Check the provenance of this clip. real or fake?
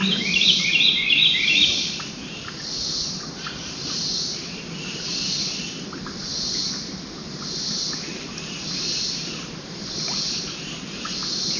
fake